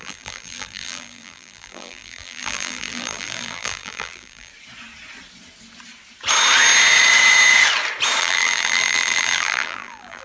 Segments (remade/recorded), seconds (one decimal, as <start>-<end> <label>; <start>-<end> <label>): 0.0-4.5 remade; 4.5-8.2 recorded; 8.2-10.2 remade